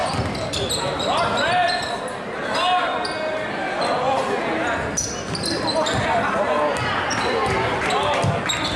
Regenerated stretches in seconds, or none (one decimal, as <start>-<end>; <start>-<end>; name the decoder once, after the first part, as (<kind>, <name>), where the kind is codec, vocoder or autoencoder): none